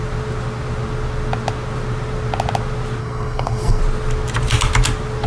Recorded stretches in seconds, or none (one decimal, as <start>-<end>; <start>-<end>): 0.0-3.0; 3.8-5.3